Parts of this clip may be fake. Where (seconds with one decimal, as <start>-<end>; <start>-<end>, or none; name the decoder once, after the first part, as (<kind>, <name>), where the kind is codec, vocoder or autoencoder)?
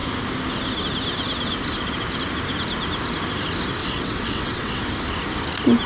3.8-4.8 (vocoder, WaveNeXt)